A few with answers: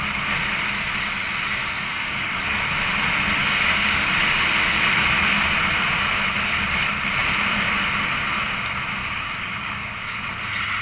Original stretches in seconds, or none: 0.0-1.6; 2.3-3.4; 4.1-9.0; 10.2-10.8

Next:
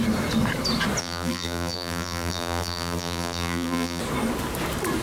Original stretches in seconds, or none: 0.0-1.0; 4.0-5.0

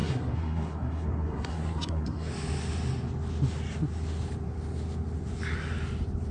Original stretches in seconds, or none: 2.3-6.3

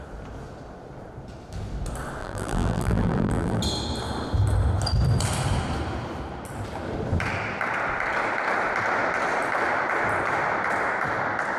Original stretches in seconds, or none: 0.0-2.2; 3.6-11.6

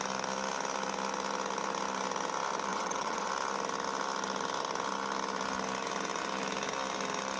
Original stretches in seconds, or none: 0.0-2.7; 3.3-7.4